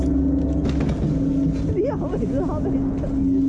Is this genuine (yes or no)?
yes